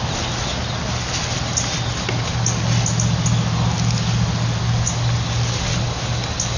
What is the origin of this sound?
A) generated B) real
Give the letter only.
B